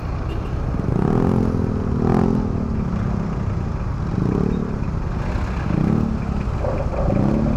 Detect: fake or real real